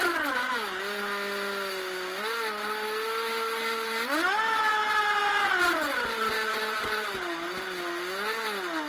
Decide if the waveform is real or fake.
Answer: real